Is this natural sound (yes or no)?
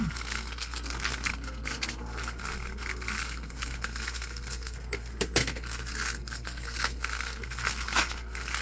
no